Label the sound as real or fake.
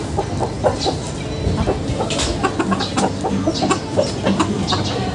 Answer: real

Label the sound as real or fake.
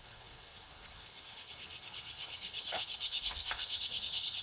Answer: fake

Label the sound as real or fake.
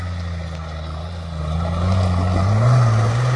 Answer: real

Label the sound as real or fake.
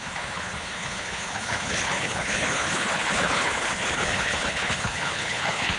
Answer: fake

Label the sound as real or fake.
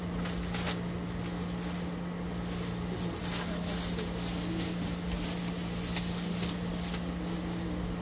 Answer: real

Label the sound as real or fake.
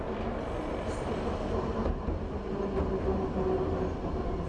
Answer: real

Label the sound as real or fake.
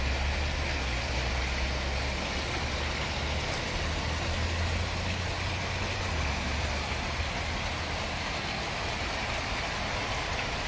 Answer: real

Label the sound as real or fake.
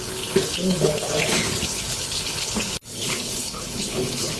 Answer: fake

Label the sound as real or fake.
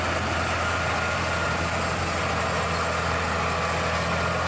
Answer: real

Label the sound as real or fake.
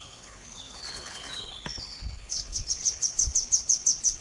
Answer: fake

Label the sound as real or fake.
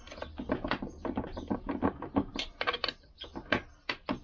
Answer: real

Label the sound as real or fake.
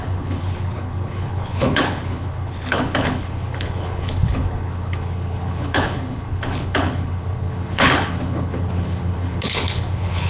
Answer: fake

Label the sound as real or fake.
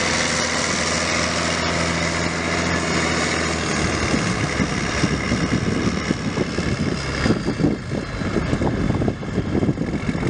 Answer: real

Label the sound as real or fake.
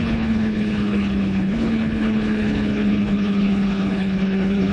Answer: fake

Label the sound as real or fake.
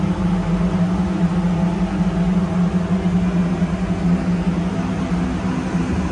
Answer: real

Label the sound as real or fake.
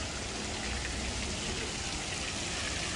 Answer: real